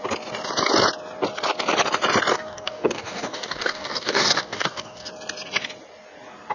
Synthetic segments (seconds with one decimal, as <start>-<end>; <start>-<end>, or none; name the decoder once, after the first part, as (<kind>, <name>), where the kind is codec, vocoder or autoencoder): 2.3-5.1 (codec, DAC)